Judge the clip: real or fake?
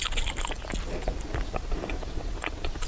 real